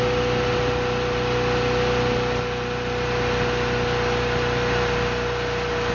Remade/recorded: recorded